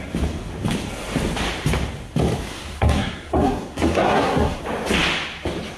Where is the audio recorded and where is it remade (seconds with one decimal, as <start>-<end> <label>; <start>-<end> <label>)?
0.0-2.5 recorded; 2.5-4.6 remade; 4.6-5.8 recorded